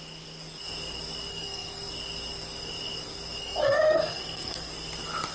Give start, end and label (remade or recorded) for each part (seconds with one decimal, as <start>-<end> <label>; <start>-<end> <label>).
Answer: 0.0-1.3 recorded; 1.3-1.9 remade; 1.9-3.4 recorded; 3.4-4.7 remade; 4.7-5.3 recorded